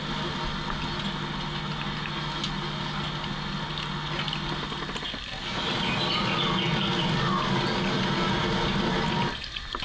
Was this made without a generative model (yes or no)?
yes